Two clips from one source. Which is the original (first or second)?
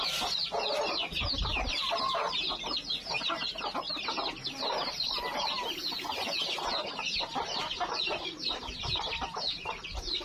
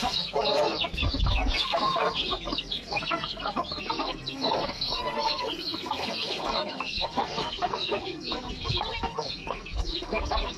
first